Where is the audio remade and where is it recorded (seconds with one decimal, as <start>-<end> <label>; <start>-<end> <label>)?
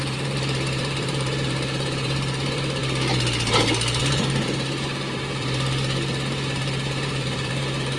0.0-2.8 remade; 2.8-4.0 recorded; 4.0-8.0 remade